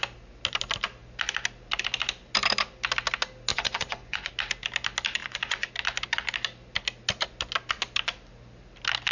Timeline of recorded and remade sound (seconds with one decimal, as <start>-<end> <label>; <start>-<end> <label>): 0.0-3.5 recorded; 3.5-4.3 remade; 4.3-5.2 recorded; 5.2-5.7 remade; 5.7-9.1 recorded